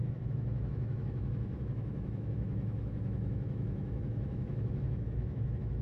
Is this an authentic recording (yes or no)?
no